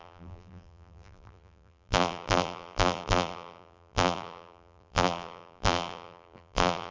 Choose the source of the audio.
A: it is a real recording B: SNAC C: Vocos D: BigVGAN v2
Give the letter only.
D